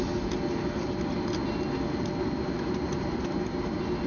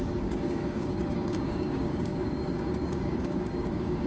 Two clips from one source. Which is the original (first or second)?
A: first